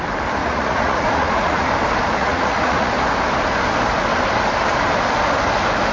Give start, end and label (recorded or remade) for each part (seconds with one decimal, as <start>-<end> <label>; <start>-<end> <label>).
0.0-0.4 recorded; 0.4-1.7 remade; 1.7-2.2 recorded; 2.2-2.9 remade; 2.9-5.9 recorded